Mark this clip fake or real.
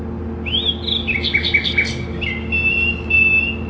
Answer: real